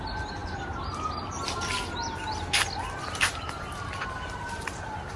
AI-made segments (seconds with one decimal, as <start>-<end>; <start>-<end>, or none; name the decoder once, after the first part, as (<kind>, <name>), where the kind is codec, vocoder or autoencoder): none